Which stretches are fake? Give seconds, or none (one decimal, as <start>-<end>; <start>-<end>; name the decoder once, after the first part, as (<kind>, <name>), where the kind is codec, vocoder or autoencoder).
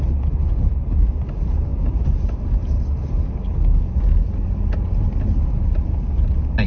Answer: none